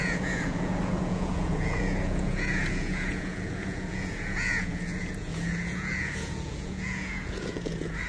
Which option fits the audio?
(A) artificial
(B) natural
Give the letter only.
A